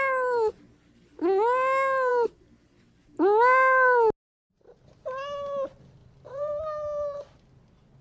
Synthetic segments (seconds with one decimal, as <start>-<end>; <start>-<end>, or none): 6.0-6.6